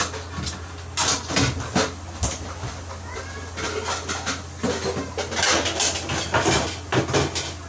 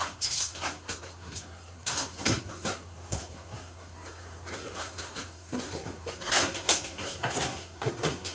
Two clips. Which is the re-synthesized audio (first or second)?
second